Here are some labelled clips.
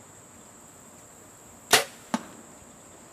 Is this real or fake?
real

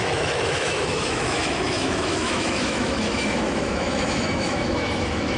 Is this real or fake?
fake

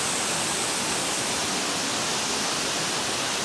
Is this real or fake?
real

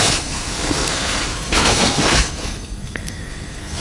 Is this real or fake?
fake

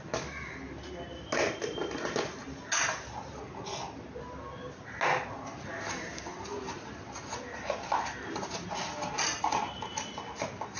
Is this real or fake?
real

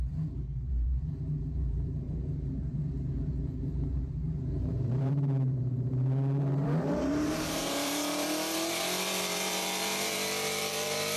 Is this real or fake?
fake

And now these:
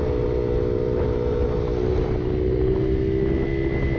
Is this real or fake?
real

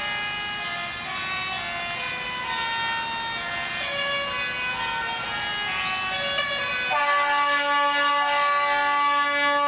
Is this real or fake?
real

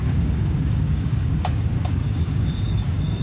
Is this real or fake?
fake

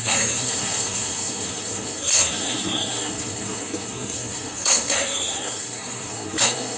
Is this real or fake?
fake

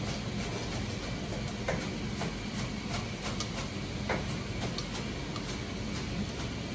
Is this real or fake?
real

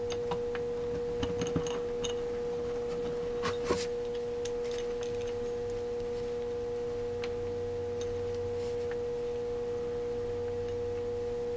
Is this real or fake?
real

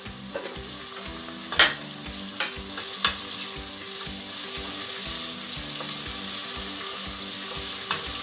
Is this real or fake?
real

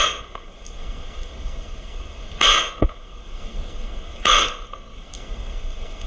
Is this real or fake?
fake